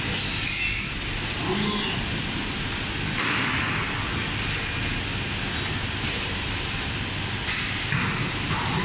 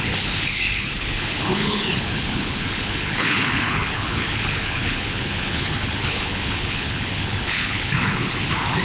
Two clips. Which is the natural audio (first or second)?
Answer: first